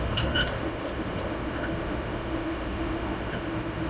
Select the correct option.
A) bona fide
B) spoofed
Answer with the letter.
B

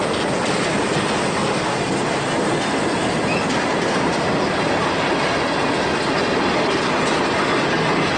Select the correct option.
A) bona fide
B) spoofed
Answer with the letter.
A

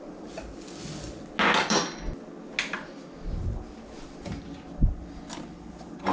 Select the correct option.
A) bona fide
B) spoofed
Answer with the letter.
A